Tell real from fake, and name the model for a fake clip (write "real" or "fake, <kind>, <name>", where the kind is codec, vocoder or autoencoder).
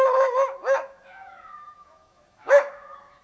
fake, autoencoder, DAC-VAE